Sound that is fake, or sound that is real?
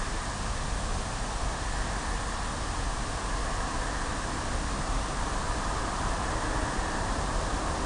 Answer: real